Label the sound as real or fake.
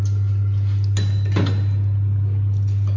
real